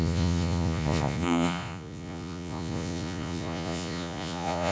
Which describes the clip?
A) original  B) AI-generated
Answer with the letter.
B